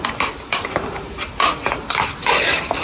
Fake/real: real